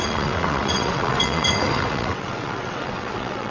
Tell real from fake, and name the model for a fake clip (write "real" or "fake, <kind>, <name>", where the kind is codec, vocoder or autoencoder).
fake, vocoder, WaveNeXt